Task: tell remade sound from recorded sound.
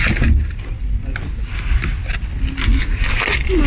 recorded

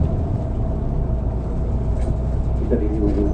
recorded